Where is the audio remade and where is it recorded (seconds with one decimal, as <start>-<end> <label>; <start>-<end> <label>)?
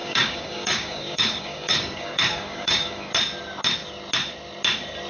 0.0-3.1 remade; 3.1-5.1 recorded